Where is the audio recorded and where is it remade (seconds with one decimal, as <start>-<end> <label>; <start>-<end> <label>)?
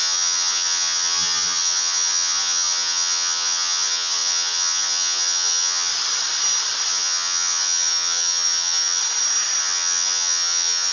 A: 0.0-5.9 remade; 5.9-6.9 recorded; 6.9-9.0 remade; 9.0-9.6 recorded; 9.6-10.9 remade